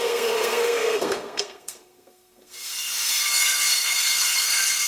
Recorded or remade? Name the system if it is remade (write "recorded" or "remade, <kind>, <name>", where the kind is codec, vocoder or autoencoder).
remade, codec, SNAC